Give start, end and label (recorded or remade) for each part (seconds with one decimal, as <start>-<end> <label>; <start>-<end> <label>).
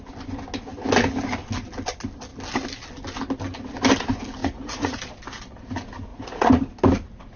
0.0-4.4 recorded; 4.4-5.0 remade; 5.0-6.1 recorded; 6.1-6.6 remade; 6.6-7.4 recorded